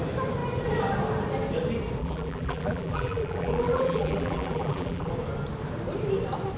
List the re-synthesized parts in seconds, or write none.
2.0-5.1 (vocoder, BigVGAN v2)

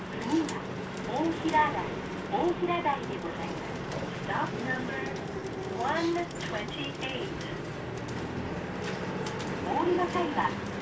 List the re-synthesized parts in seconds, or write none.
0.0-5.4 (vocoder, BigVGAN v2); 8.5-10.8

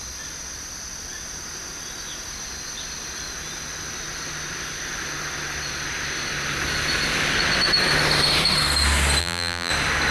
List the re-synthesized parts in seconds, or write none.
9.2-9.7 (vocoder, BigVGAN v2)

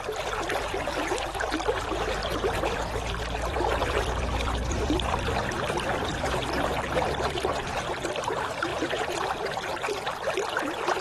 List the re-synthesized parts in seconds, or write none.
0.0-6.1 (vocoder, BigVGAN v2); 7.0-8.7; 9.3-11.0

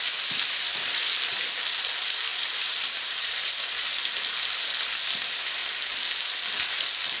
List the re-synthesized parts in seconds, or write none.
2.3-4.0 (vocoder, BigVGAN v2)

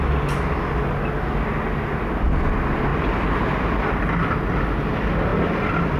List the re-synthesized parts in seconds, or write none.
2.9-4.6 (vocoder, BigVGAN v2)

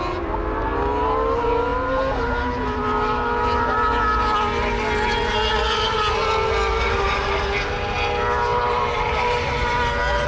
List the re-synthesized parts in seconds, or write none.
6.7-7.4 (vocoder, BigVGAN v2); 8.5-9.5